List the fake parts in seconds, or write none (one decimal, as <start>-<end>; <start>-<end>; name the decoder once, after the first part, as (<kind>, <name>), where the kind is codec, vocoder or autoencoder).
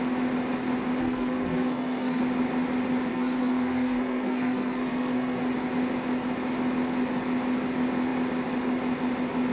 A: 1.0-2.2 (codec, SNAC); 3.1-5.4